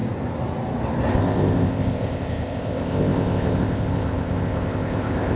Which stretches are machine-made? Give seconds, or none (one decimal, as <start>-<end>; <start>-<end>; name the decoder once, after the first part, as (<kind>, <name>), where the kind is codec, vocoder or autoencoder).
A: 1.1-5.4 (codec, ZipCodec)